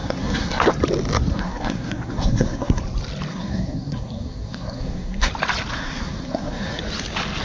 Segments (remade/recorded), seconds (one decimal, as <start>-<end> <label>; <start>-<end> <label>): 0.0-0.7 remade; 0.7-1.3 recorded; 1.3-2.8 remade; 2.8-3.3 recorded; 3.3-5.3 remade; 5.3-5.7 recorded; 5.7-6.8 remade; 6.8-7.4 recorded